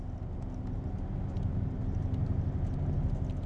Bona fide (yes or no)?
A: yes